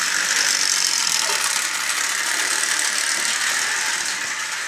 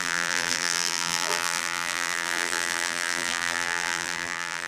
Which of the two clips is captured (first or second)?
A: first